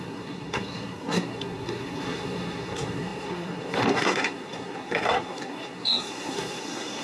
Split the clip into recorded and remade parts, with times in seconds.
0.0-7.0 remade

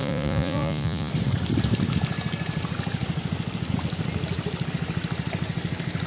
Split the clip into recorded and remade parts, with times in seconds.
0.0-1.1 remade; 1.1-6.1 recorded

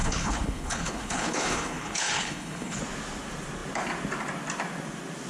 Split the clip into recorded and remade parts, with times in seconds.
0.0-2.8 remade; 2.8-5.3 recorded

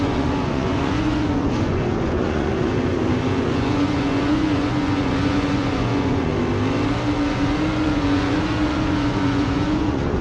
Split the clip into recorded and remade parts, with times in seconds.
0.0-6.3 remade; 6.3-7.3 recorded; 7.3-10.2 remade

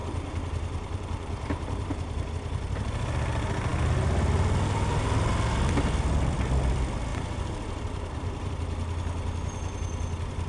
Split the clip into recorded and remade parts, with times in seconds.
0.0-2.3 remade; 2.3-7.1 recorded; 7.1-8.5 remade; 8.5-10.5 recorded

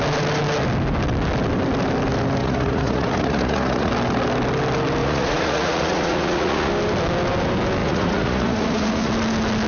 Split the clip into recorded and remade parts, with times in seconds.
0.0-2.4 recorded; 2.4-3.9 remade; 3.9-5.0 recorded; 5.0-6.7 remade; 6.7-7.8 recorded; 7.8-9.1 remade; 9.1-9.7 recorded

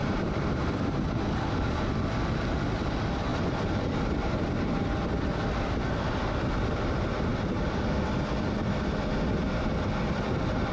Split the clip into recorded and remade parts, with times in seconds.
0.0-1.0 remade; 1.0-7.3 recorded; 7.3-7.9 remade; 7.9-10.7 recorded

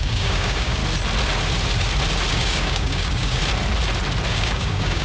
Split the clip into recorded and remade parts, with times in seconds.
0.0-0.8 remade; 0.8-2.3 recorded; 2.3-3.4 remade; 3.4-4.3 recorded; 4.3-5.0 remade